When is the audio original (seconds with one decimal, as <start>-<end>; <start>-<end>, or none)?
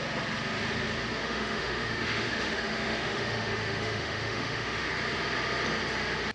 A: 0.0-1.2; 4.9-6.3